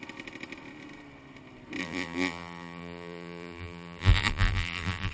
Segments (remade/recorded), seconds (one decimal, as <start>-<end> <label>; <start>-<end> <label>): 0.0-1.8 recorded; 1.8-5.1 remade